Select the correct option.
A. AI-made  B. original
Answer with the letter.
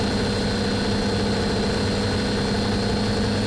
B